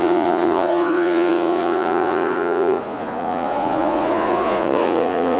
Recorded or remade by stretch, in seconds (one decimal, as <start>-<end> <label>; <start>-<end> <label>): 0.0-5.4 remade